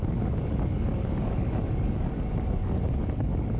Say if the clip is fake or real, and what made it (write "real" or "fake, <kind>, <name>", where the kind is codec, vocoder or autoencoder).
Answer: fake, codec, DAC